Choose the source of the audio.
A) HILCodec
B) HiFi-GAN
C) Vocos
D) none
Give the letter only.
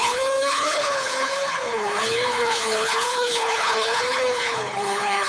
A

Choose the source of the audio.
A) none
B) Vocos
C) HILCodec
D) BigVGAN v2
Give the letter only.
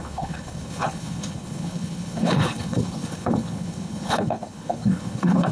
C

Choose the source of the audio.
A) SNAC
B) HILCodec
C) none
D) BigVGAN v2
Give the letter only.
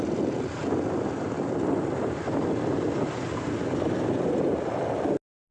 C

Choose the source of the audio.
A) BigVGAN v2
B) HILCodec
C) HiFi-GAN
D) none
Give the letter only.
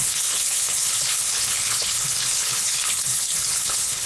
B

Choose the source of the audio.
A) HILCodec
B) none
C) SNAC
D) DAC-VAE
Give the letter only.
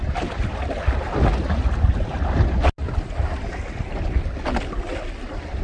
B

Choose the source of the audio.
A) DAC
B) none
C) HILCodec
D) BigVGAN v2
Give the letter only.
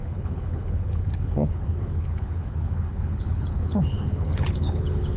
C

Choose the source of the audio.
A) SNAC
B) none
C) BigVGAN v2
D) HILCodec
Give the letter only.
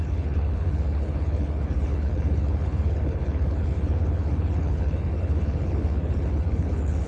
D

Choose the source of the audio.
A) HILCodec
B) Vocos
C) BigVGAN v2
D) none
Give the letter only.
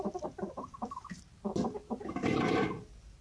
D